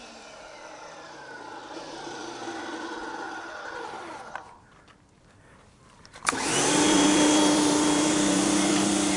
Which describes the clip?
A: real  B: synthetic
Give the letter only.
B